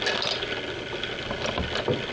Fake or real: real